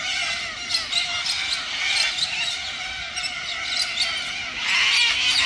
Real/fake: real